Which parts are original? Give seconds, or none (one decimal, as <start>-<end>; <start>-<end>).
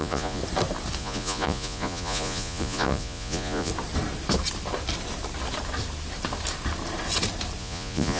0.4-1.0; 3.7-7.6